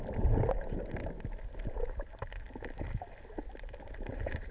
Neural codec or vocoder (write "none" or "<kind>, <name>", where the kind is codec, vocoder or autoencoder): none